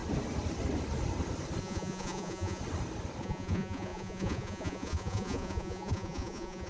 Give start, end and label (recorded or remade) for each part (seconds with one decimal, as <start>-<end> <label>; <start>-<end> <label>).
0.0-1.6 recorded; 1.6-2.6 remade; 2.6-3.2 recorded; 3.2-6.7 remade